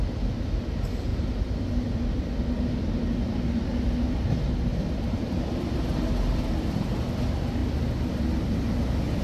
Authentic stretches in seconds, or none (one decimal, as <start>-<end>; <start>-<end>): 0.0-1.1; 2.2-4.7; 6.9-7.6; 8.4-9.2